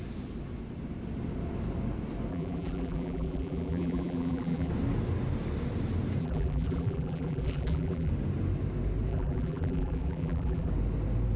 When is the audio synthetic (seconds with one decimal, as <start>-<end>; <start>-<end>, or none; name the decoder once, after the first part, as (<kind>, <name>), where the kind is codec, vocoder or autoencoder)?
2.3-4.7 (vocoder, BigVGAN v2); 6.2-8.1; 9.1-10.7